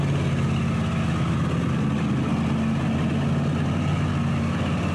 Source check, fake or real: real